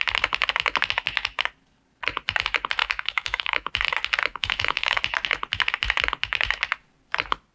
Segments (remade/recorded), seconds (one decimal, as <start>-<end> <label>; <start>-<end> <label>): 0.0-2.8 recorded; 2.8-3.7 remade; 3.7-4.3 recorded; 4.3-5.0 remade; 5.0-7.5 recorded